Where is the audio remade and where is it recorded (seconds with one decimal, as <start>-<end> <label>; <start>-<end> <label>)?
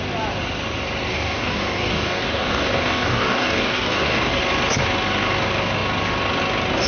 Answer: 0.0-1.1 recorded; 1.1-4.4 remade; 4.4-6.9 recorded